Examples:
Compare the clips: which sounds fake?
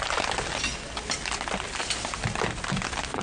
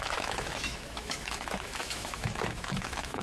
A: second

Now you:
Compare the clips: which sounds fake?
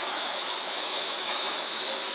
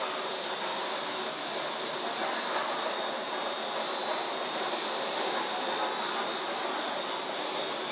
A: first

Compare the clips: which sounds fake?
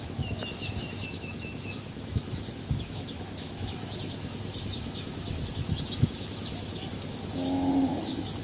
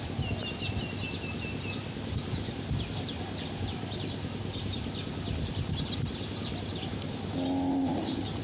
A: first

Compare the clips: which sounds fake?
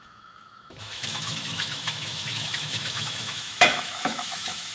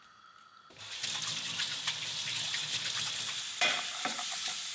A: first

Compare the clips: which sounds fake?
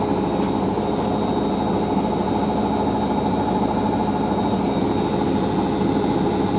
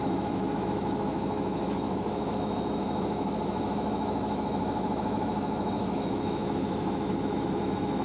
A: second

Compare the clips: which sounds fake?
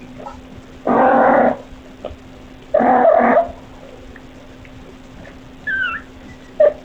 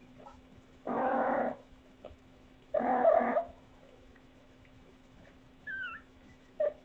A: second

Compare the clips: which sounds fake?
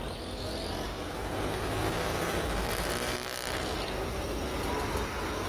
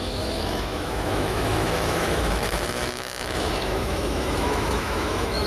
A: second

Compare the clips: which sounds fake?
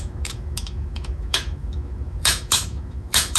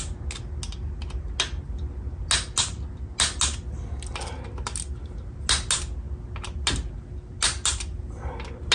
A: first